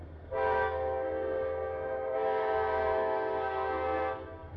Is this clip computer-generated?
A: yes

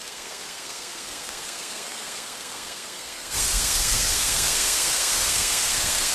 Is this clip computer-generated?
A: yes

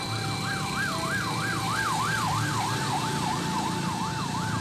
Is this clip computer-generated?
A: no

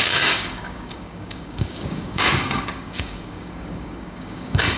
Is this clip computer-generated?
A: yes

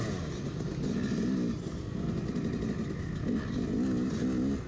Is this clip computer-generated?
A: no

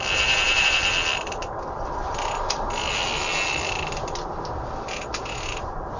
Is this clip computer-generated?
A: no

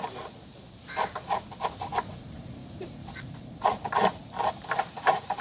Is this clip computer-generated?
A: yes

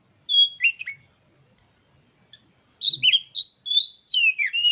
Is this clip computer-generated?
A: no